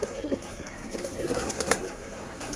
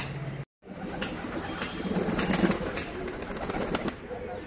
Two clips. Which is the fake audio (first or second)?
first